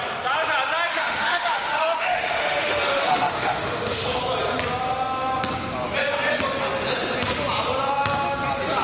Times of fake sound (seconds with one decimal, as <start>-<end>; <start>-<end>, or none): 0.9-4.2